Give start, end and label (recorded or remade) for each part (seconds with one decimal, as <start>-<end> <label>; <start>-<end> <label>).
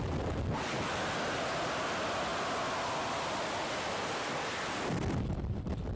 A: 0.0-6.0 recorded